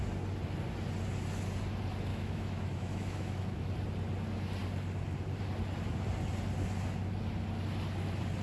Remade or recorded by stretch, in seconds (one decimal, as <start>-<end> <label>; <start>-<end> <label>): 0.0-2.1 recorded; 2.1-3.7 remade; 3.7-8.4 recorded